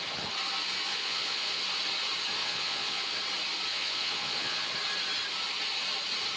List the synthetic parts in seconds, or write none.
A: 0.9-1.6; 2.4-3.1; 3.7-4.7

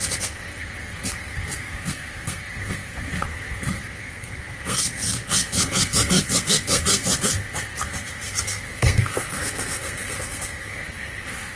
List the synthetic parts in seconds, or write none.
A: 0.0-11.6

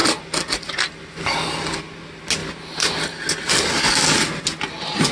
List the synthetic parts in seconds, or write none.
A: 2.4-3.0

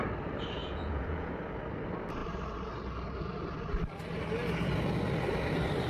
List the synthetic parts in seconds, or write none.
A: 0.6-1.3

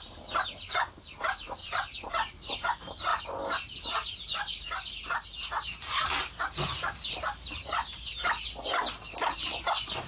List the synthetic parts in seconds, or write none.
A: 0.0-3.1; 5.6-8.2

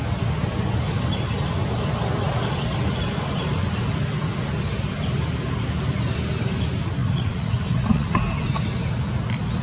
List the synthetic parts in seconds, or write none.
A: 7.0-8.2

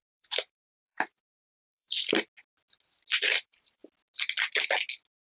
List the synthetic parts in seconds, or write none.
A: 0.0-2.0; 3.1-3.8